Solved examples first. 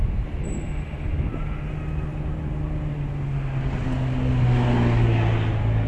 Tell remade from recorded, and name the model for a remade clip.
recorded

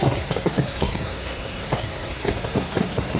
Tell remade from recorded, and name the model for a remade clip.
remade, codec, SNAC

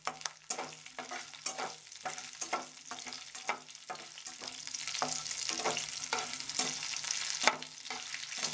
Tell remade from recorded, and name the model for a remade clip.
recorded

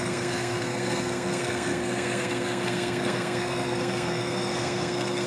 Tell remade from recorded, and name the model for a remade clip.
remade, codec, SNAC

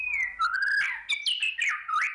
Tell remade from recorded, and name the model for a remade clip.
recorded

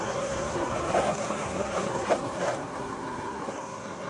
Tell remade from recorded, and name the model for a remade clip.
remade, codec, SNAC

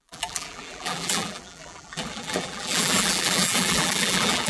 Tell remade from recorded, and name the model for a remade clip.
remade, vocoder, BigVGAN v2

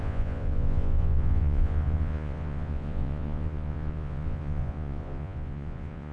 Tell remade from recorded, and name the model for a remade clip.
remade, vocoder, Vocos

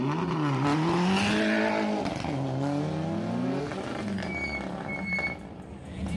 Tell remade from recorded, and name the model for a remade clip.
recorded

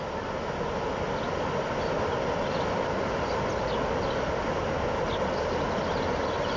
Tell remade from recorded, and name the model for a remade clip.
recorded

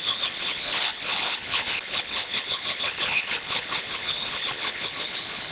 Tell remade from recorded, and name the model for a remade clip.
remade, codec, HILCodec